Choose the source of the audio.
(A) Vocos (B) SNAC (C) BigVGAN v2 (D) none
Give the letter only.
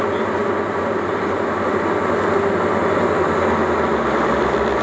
D